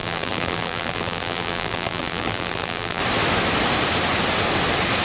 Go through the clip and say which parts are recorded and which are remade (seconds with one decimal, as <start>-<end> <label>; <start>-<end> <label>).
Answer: 0.0-3.0 remade; 3.0-5.0 recorded